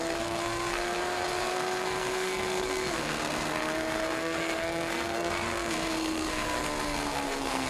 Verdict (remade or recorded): remade